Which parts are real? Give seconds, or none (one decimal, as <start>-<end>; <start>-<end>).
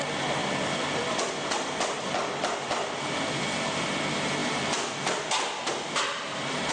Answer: 0.0-0.4; 3.3-4.4